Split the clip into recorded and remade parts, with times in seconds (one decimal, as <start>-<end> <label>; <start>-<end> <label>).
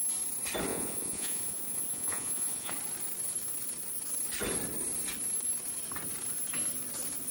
0.0-0.7 recorded; 0.7-2.7 remade; 2.7-7.3 recorded